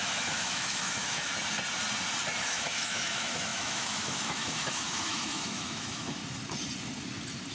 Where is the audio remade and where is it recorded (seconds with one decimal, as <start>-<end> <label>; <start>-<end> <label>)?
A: 0.0-1.3 remade; 1.3-2.4 recorded; 2.4-6.2 remade; 6.2-7.5 recorded